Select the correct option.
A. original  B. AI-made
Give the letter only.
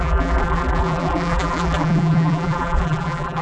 B